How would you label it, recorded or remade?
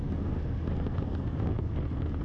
remade